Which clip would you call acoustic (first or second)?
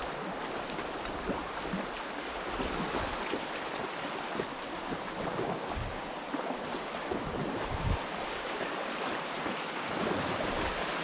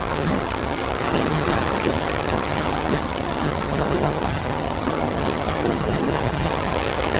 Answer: first